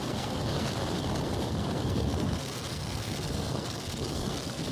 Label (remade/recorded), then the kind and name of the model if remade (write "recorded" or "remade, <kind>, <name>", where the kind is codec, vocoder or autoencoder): remade, codec, SNAC